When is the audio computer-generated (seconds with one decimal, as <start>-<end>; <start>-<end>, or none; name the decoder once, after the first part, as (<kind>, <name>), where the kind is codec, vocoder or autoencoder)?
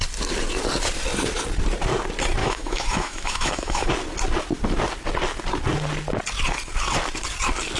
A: 2.4-3.9 (autoencoder, DAC-VAE)